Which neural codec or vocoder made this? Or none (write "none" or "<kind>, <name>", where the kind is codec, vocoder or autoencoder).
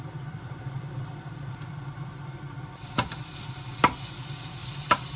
vocoder, BigVGAN v2